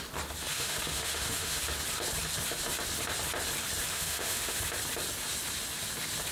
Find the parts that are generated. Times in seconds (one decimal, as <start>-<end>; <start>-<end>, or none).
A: 0.5-1.6; 3.9-4.6